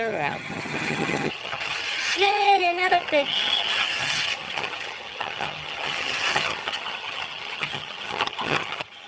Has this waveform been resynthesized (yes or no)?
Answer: yes